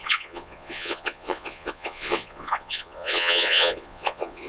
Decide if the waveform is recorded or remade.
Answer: remade